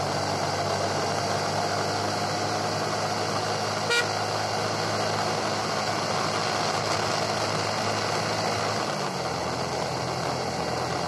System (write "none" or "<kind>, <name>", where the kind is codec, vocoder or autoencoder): none